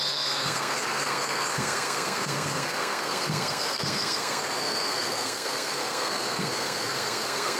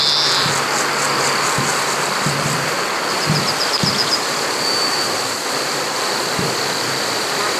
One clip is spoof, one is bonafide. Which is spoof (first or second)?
first